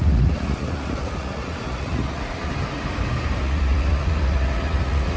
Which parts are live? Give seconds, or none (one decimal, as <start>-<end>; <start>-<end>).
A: 2.5-3.4